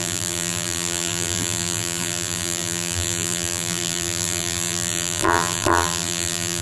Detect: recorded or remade remade